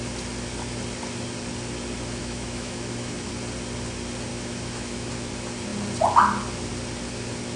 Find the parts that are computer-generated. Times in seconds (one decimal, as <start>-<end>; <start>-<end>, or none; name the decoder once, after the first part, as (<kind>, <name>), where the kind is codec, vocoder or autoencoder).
2.2-3.3 (autoencoder, DAC-VAE); 4.3-5.1